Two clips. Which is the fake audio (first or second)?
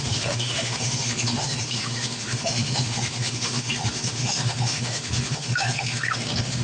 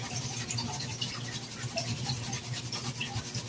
first